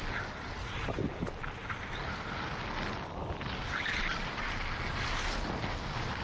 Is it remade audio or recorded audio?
recorded